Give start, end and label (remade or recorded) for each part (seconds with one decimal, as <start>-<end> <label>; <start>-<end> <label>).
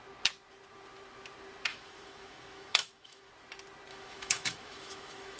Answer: 0.0-1.7 recorded; 1.7-3.3 remade; 3.3-3.9 recorded; 3.9-5.4 remade